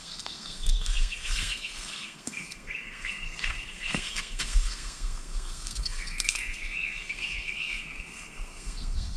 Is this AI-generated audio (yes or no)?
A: yes